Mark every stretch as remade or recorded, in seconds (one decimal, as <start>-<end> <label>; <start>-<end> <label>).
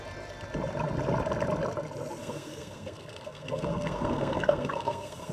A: 0.0-2.2 recorded; 2.2-5.3 remade